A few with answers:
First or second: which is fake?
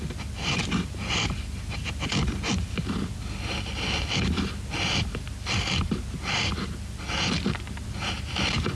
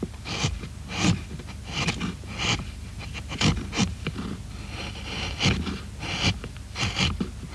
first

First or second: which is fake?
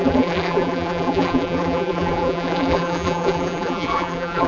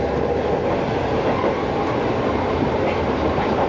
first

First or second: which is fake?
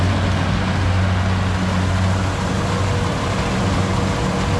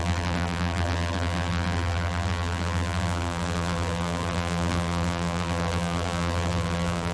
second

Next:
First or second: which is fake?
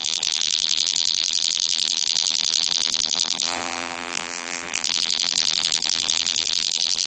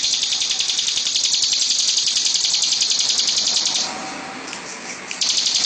first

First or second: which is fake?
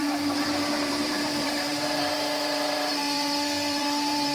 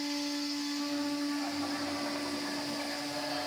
first